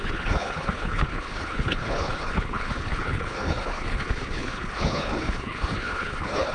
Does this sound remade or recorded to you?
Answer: remade